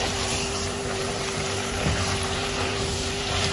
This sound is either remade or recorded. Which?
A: remade